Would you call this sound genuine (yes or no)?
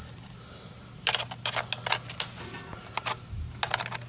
yes